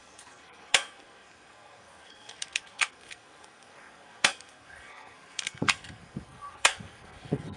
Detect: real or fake fake